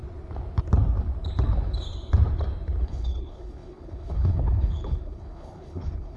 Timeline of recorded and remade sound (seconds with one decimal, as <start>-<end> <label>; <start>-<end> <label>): 0.0-2.8 recorded; 2.8-6.2 remade